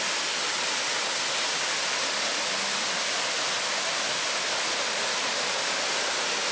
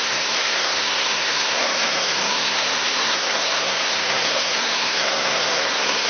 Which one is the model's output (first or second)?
second